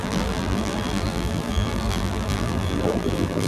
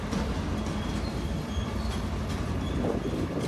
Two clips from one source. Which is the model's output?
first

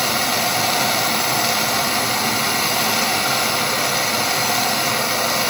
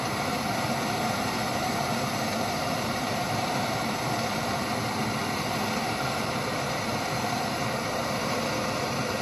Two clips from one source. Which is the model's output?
second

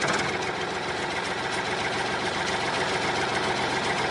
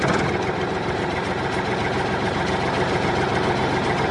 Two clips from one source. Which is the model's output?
second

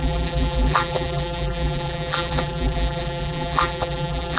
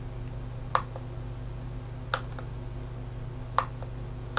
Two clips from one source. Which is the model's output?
first